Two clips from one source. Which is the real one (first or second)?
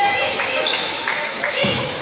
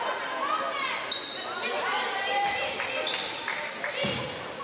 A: second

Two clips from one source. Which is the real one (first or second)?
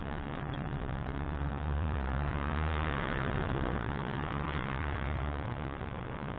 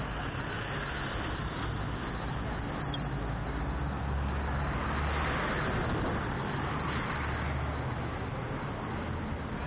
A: second